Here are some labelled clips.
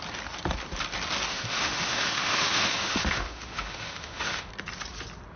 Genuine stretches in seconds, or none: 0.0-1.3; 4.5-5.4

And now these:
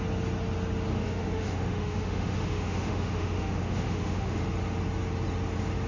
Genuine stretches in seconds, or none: 0.0-0.9; 4.4-5.9